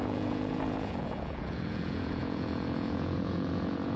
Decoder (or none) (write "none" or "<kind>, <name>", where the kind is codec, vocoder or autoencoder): vocoder, Vocos